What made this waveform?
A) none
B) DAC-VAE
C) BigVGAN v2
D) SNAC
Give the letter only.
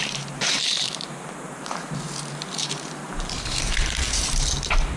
C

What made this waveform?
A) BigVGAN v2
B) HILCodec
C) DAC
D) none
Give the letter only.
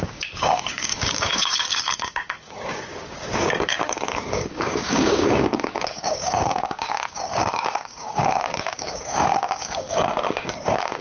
C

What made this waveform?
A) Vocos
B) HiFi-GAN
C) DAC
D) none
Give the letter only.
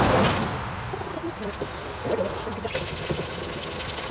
D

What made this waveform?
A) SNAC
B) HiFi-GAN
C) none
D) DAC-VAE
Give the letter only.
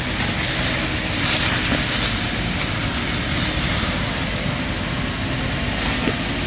C